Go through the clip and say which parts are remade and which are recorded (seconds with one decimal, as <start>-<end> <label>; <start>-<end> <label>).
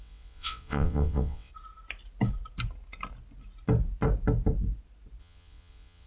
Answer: 0.0-1.5 remade; 1.5-5.2 recorded; 5.2-6.1 remade